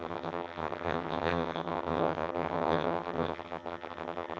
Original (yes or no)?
no